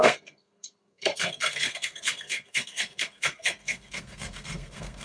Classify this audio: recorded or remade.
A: remade